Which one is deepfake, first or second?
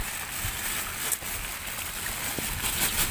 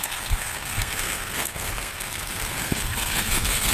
second